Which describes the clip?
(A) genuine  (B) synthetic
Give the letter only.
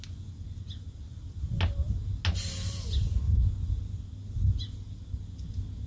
A